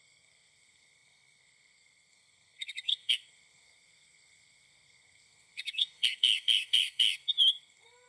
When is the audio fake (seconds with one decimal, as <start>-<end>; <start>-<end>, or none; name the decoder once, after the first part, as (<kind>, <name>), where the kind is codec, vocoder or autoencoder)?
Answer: 0.0-8.1 (codec, SNAC)